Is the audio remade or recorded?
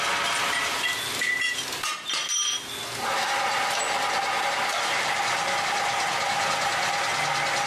recorded